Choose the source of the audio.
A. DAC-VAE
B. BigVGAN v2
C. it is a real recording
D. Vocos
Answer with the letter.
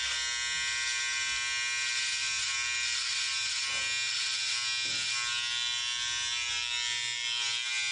C